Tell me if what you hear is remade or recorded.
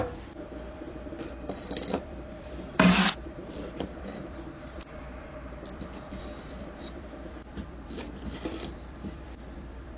remade